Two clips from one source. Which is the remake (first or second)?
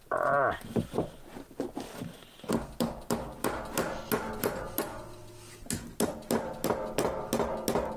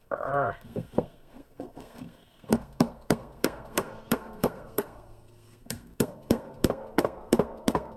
second